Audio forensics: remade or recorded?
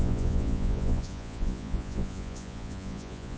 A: remade